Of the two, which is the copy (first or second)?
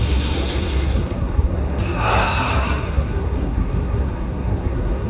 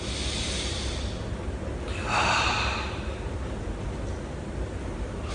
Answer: first